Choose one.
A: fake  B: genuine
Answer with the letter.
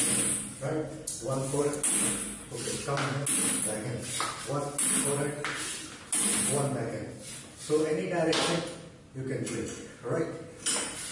B